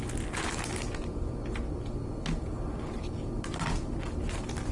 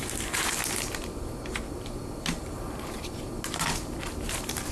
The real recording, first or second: first